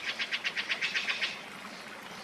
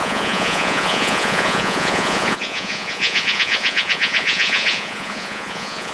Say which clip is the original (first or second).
first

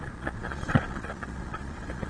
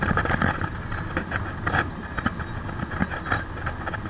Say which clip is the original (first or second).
second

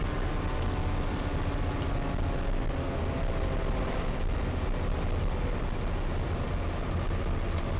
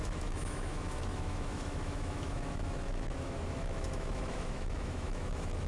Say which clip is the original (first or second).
first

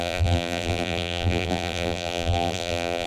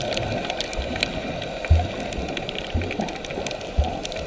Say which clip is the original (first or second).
second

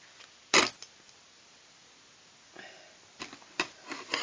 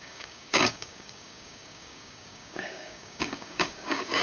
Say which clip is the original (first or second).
first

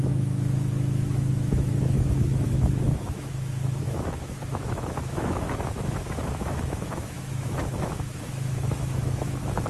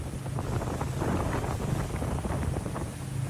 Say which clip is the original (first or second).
second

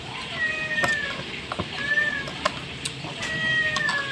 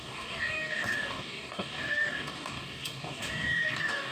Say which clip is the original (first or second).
first